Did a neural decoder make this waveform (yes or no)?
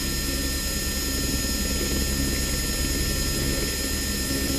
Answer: no